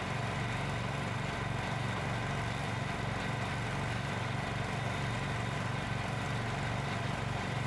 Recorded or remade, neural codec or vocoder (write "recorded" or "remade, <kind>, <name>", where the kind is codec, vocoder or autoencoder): recorded